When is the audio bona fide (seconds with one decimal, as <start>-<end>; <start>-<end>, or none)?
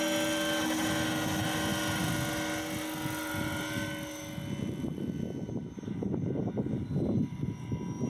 0.0-8.1